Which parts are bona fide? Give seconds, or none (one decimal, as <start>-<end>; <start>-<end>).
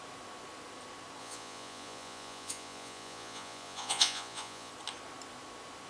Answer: 0.0-1.2; 4.7-5.9